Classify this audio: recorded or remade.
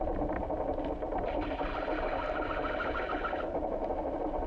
recorded